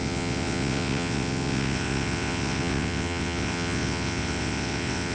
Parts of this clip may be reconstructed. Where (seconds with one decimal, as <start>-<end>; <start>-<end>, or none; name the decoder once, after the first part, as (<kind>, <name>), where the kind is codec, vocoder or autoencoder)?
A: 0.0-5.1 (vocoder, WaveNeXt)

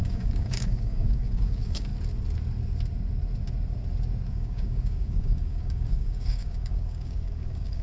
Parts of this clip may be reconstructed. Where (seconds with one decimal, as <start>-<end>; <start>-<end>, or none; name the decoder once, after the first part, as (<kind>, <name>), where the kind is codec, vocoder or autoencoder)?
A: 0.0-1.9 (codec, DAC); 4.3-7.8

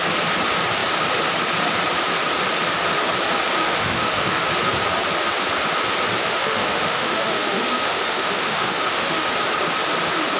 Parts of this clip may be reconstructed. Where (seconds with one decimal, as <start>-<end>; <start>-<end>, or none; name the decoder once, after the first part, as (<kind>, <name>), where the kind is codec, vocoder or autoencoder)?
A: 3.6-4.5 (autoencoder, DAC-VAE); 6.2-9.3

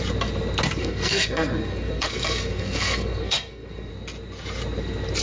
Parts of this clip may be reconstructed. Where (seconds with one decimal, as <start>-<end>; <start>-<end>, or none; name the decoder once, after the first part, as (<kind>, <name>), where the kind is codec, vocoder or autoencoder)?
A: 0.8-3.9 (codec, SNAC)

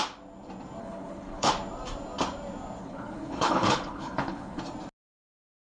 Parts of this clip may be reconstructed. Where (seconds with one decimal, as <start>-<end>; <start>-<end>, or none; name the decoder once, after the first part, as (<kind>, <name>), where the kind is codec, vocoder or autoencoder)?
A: 0.8-1.5 (codec, HILCodec); 2.8-4.6

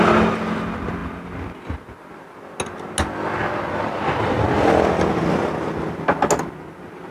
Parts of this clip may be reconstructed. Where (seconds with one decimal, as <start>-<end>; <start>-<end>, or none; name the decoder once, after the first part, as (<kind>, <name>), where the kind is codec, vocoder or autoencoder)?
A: none

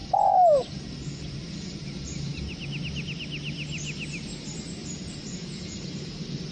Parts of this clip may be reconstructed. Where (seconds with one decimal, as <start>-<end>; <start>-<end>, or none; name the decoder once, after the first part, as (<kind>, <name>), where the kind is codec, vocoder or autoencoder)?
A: 0.0-0.8 (vocoder, BigVGAN v2); 4.8-6.5

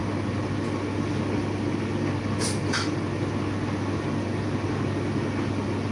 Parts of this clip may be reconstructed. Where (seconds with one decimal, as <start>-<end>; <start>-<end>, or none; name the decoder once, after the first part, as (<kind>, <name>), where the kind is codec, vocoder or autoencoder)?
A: none